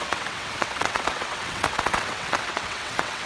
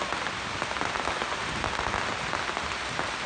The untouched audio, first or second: second